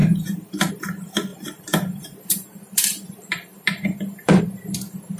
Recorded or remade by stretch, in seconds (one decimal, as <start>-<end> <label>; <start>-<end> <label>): 0.0-0.7 remade; 0.7-1.3 recorded; 1.3-4.4 remade; 4.4-5.2 recorded